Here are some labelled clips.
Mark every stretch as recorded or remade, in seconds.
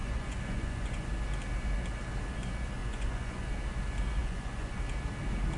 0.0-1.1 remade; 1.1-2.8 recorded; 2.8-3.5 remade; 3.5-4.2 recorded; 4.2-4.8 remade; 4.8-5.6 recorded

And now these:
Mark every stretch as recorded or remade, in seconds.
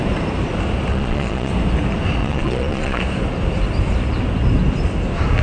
0.0-0.9 recorded; 0.9-1.5 remade; 1.5-2.2 recorded; 2.2-3.0 remade; 3.0-5.4 recorded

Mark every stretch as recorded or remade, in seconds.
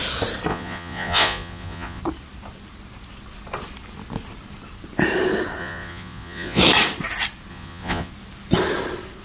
0.0-0.5 recorded; 0.5-2.0 remade; 2.0-5.6 recorded; 5.6-6.6 remade; 6.6-7.5 recorded; 7.5-8.1 remade; 8.1-9.2 recorded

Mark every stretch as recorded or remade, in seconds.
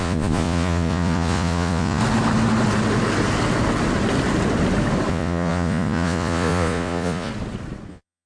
0.0-2.0 remade; 2.0-5.1 recorded; 5.1-7.3 remade; 7.3-7.9 recorded; 7.9-8.3 remade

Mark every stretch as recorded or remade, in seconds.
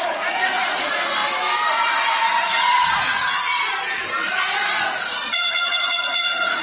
0.0-1.2 remade; 1.2-1.7 recorded; 1.7-3.7 remade; 3.7-4.3 recorded; 4.3-6.6 remade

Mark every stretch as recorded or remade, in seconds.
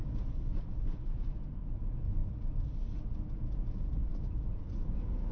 0.0-2.2 remade; 2.2-3.3 recorded; 3.3-5.3 remade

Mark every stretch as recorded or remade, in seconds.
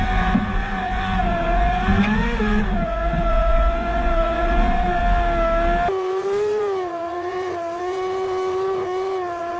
0.0-5.0 remade; 5.0-5.9 recorded; 5.9-9.6 remade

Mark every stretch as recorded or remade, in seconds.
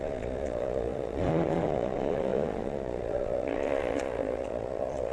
0.0-5.1 remade